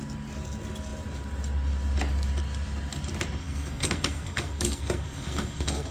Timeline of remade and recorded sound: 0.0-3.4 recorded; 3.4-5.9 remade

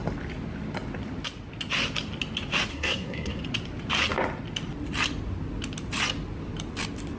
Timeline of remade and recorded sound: 0.0-2.7 recorded; 2.7-3.4 remade; 3.4-7.2 recorded

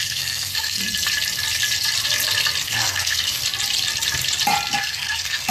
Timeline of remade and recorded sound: 0.0-0.8 remade; 0.8-2.6 recorded; 2.6-3.4 remade; 3.4-4.8 recorded; 4.8-5.5 remade